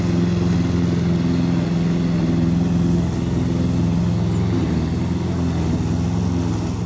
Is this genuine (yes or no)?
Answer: yes